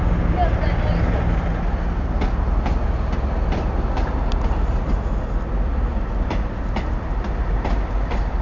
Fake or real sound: real